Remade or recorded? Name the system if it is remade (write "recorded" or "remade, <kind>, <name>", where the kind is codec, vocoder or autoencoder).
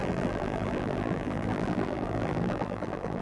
remade, vocoder, BigVGAN v2